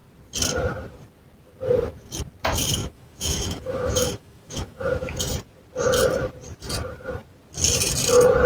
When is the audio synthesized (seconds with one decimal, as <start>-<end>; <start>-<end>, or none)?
2.8-5.2